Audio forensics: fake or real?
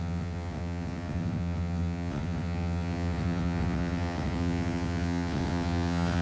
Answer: fake